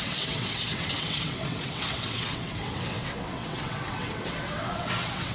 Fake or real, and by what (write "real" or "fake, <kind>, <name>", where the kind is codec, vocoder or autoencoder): fake, vocoder, WaveNeXt